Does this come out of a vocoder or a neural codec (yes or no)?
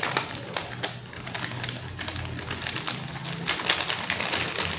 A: no